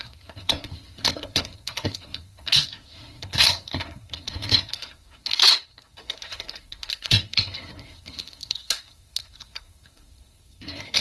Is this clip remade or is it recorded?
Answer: remade